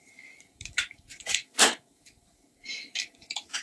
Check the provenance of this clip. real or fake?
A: fake